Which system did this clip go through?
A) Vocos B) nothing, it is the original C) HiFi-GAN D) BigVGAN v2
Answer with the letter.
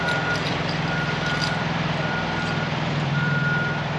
D